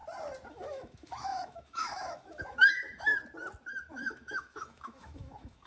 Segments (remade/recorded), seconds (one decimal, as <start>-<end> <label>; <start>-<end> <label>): 0.0-0.5 recorded; 0.5-3.1 remade; 3.1-3.9 recorded; 3.9-5.7 remade